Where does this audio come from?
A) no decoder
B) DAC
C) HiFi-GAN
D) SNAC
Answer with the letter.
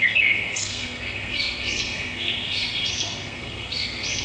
D